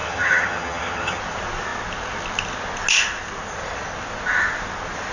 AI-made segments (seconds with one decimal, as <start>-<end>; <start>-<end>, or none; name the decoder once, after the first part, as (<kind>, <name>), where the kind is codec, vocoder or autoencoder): 0.0-1.2 (vocoder, HiFi-GAN)